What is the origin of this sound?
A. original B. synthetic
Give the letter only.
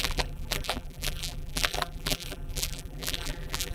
B